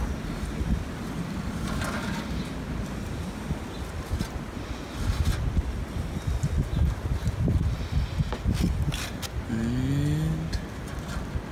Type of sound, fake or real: real